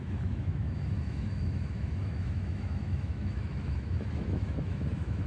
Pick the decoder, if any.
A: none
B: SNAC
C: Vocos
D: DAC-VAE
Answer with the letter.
D